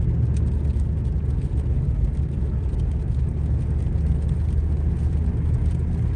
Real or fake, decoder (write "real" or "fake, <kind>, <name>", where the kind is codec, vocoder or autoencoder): real